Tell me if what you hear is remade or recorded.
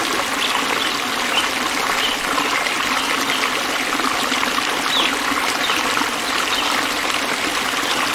recorded